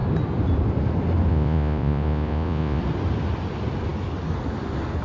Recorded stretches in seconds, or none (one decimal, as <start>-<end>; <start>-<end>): 0.0-1.3; 2.8-5.0